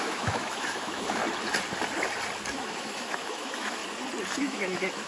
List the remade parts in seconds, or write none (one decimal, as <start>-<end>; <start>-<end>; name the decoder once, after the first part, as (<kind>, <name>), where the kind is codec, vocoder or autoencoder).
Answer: 0.0-1.2 (autoencoder, DAC-VAE); 2.5-3.8; 4.4-5.1